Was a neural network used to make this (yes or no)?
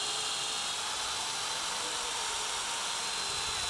no